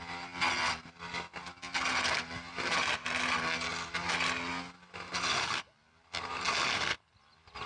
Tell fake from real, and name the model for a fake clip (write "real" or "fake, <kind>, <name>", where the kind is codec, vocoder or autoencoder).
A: real